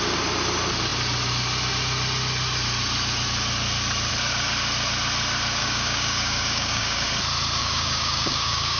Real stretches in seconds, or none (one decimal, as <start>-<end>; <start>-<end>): 0.0-5.6; 7.0-7.6